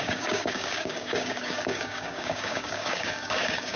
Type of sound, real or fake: fake